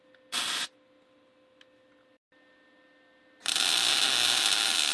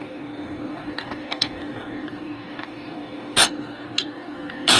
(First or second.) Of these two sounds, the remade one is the second